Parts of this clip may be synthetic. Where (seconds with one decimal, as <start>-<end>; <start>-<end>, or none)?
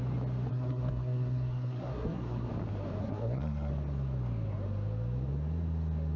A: 0.5-2.5; 3.0-3.7